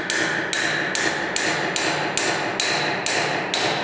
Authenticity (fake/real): real